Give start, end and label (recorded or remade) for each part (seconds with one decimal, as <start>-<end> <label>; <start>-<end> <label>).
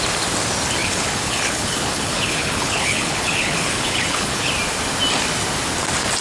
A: 0.0-0.8 recorded; 0.8-4.5 remade; 4.5-6.2 recorded